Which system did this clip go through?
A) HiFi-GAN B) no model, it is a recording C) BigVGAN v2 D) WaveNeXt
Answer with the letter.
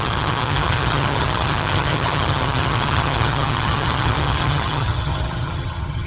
A